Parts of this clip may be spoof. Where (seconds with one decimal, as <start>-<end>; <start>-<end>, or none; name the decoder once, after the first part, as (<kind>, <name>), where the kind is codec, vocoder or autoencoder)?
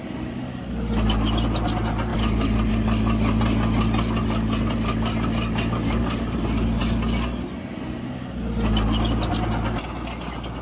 none